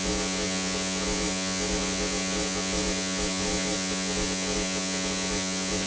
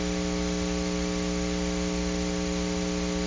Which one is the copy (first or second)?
first